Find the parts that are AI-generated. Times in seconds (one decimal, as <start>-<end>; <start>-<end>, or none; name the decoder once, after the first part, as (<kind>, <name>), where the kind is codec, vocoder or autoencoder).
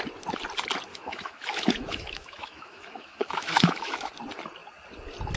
0.9-4.1 (autoencoder, DAC-VAE)